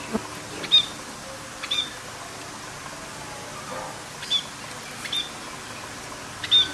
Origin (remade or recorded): recorded